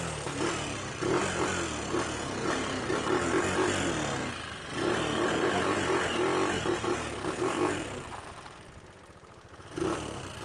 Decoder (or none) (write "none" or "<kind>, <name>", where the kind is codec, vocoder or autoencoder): none